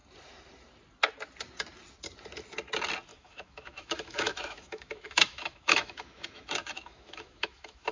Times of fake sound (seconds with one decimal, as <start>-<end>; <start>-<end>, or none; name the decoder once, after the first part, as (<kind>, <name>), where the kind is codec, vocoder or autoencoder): 3.1-7.9 (autoencoder, DAC-VAE)